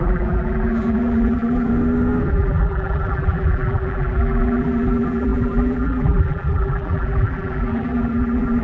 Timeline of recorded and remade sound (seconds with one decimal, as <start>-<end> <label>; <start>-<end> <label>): 0.0-1.7 remade; 1.7-2.3 recorded; 2.3-8.6 remade